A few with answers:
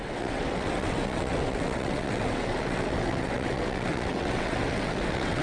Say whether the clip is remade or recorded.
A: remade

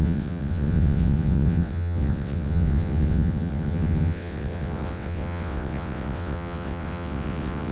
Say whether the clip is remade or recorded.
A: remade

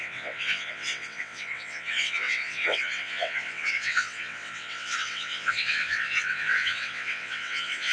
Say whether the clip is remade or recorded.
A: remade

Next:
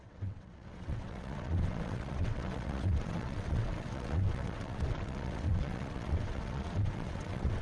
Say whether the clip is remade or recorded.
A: remade